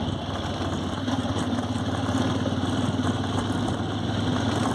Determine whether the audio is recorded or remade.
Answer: recorded